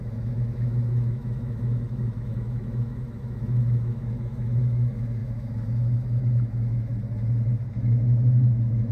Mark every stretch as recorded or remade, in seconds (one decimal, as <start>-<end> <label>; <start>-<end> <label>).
0.0-6.9 remade; 6.9-7.7 recorded; 7.7-8.9 remade